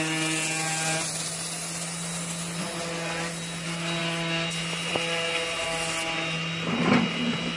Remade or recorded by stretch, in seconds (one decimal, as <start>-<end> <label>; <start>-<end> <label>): 0.0-7.6 recorded